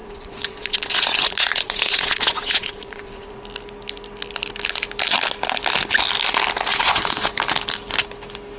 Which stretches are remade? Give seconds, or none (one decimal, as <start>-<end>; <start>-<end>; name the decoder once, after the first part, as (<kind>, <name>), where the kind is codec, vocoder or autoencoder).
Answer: 0.0-3.4 (vocoder, Vocos); 6.7-7.3